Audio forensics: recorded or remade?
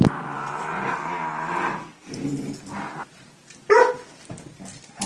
recorded